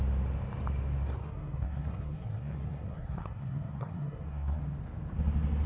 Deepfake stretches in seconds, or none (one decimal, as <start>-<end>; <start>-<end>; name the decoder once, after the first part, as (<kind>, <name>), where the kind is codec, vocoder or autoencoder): 1.2-4.6 (codec, SNAC)